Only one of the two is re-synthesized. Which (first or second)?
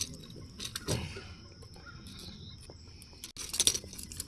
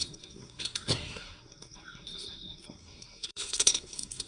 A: second